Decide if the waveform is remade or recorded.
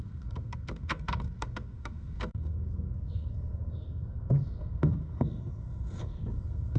remade